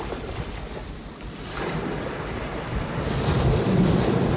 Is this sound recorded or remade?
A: recorded